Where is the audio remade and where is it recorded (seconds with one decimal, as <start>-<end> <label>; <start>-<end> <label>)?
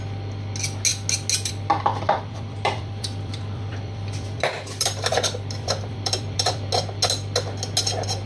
0.0-1.9 recorded; 1.9-6.7 remade; 6.7-8.3 recorded